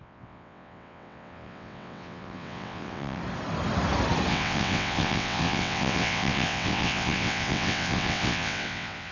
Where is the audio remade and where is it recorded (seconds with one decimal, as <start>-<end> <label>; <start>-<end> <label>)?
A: 0.0-3.2 remade; 3.2-4.3 recorded; 4.3-9.1 remade